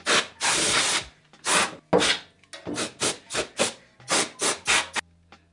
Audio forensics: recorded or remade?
recorded